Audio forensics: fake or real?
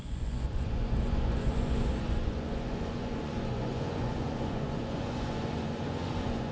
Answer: fake